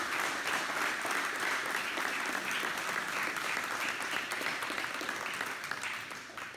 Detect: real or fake fake